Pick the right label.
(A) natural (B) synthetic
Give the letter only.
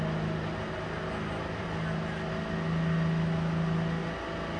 A